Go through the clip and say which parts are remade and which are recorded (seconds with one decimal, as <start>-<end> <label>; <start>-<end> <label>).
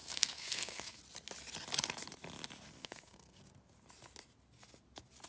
0.0-1.0 remade; 1.0-2.8 recorded; 2.8-3.4 remade; 3.4-5.3 recorded